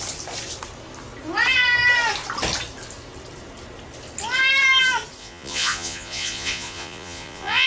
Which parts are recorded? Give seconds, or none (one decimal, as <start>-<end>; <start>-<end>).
0.0-5.2